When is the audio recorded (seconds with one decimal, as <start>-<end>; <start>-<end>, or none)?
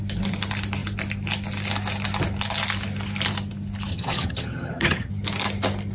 0.0-3.9; 5.1-5.9